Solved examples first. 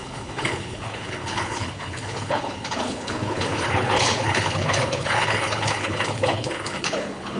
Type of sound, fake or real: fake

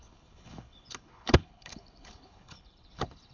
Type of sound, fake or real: fake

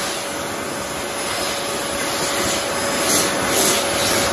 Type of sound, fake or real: real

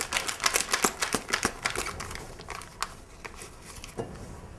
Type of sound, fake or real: real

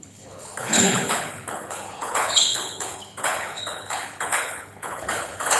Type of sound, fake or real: fake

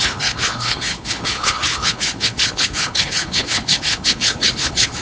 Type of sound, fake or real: fake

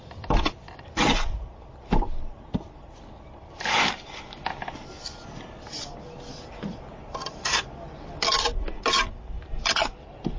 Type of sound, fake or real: real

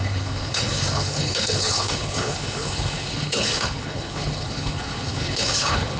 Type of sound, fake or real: fake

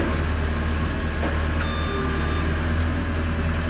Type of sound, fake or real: real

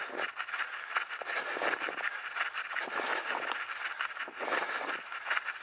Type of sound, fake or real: real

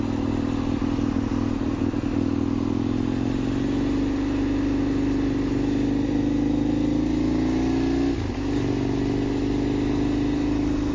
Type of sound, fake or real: real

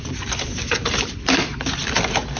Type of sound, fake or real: real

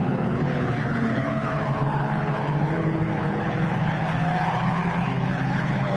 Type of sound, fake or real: fake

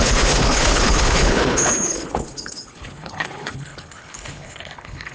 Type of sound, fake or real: fake